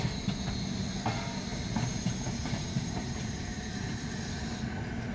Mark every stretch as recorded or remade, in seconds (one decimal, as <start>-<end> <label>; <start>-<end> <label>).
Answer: 0.0-1.5 recorded; 1.5-4.6 remade; 4.6-5.1 recorded